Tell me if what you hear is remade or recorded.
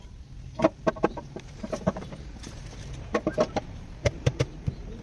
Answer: remade